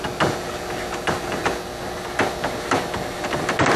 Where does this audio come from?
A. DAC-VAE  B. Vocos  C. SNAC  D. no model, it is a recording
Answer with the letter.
D